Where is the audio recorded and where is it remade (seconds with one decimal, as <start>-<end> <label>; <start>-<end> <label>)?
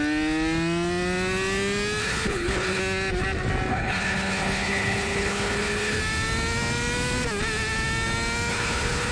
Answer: 0.0-2.0 recorded; 2.0-2.8 remade; 2.8-3.7 recorded; 3.7-6.0 remade; 6.0-8.5 recorded; 8.5-9.1 remade